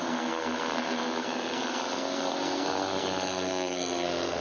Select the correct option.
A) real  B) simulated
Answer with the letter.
B